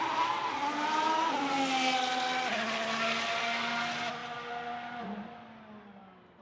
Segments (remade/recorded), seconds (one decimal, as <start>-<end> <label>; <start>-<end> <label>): 0.0-4.2 recorded; 4.2-6.4 remade